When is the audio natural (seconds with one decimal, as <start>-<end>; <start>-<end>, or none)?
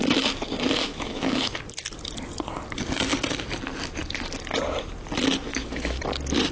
0.0-0.9; 1.5-5.5; 6.0-6.5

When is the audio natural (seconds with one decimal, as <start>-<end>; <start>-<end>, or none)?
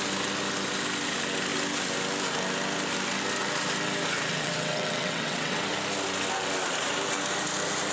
0.0-4.3; 5.7-7.9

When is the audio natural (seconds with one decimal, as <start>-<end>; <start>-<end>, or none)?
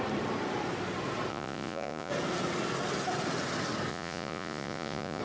0.0-1.3; 2.1-3.9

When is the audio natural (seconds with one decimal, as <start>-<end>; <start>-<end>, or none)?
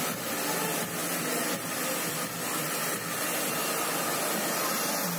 0.0-5.2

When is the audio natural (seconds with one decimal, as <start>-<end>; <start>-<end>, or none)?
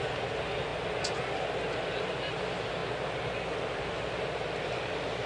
0.0-0.7; 2.3-5.3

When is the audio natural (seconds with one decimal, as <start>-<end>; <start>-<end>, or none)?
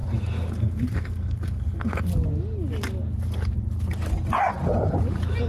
0.0-0.5; 2.1-5.5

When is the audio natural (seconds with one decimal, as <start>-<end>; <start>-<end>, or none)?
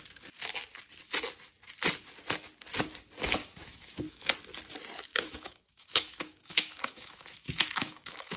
0.0-3.4; 4.3-5.1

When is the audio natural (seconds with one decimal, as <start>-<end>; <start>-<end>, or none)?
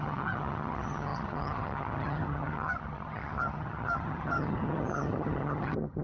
none